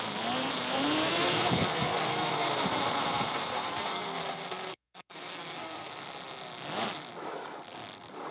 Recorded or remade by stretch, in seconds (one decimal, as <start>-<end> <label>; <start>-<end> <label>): 0.0-1.1 recorded; 1.1-2.3 remade; 2.3-3.5 recorded; 3.5-5.9 remade; 5.9-8.3 recorded